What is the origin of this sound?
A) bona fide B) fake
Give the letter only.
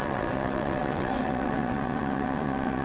B